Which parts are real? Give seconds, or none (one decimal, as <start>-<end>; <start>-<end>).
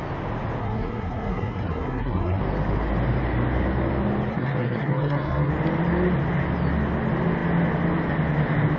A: 0.0-0.6; 2.4-4.3; 5.5-8.8